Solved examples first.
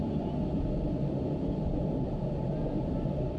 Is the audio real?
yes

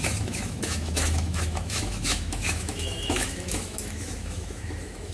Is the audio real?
no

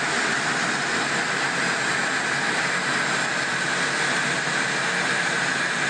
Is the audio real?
yes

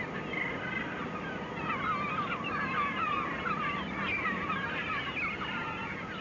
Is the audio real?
yes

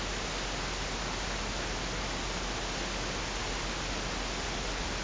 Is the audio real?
yes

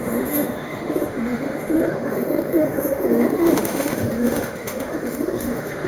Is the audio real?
no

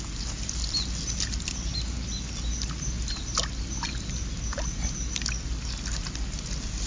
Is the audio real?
yes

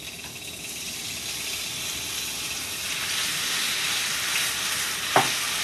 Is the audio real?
yes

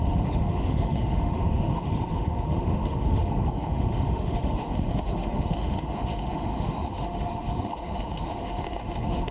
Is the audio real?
no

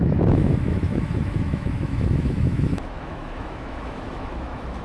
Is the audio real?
no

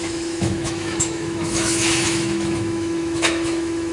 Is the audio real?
no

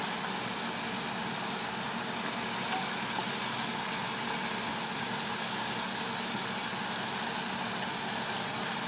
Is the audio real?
yes